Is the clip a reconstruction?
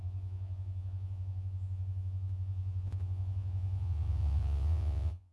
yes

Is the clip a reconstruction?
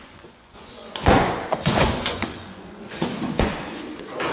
yes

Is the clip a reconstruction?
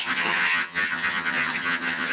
yes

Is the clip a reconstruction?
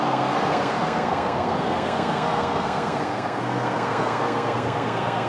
yes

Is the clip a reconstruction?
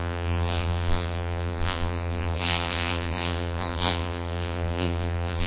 yes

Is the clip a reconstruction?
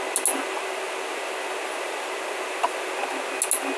no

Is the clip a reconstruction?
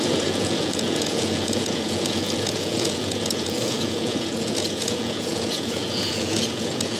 yes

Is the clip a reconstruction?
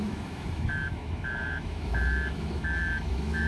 yes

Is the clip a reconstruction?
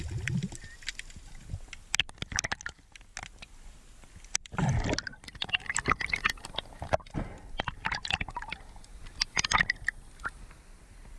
no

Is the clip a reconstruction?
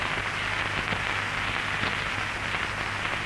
no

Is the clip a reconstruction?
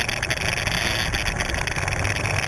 no